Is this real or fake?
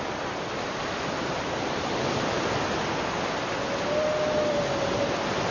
real